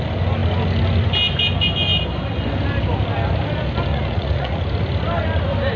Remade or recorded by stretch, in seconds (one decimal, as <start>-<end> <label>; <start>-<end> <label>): 0.0-3.9 recorded; 3.9-4.6 remade; 4.6-5.8 recorded